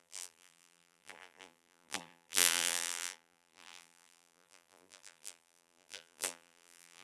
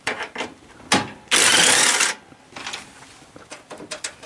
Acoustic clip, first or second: second